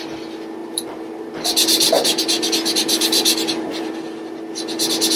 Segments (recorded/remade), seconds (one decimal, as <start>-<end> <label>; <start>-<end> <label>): 0.0-0.6 recorded; 0.6-1.3 remade; 1.3-2.0 recorded; 2.0-3.9 remade; 3.9-5.2 recorded